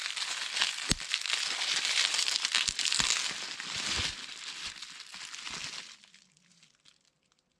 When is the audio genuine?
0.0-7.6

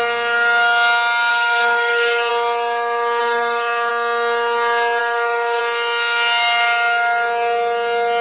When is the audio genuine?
0.0-1.3; 2.3-3.2; 3.9-5.0; 5.6-8.2